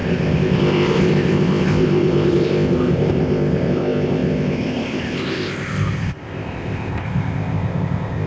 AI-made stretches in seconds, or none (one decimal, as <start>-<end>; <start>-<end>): 0.0-8.3